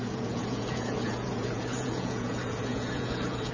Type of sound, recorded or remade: remade